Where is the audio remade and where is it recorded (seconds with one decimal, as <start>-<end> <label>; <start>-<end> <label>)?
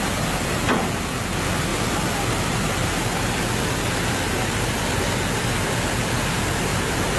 0.0-6.7 recorded; 6.7-7.2 remade